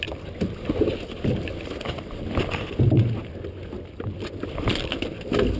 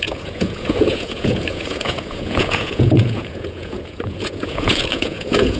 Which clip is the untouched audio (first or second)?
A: first